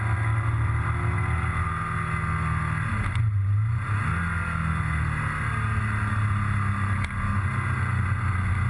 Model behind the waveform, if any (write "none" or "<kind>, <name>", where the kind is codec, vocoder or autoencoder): none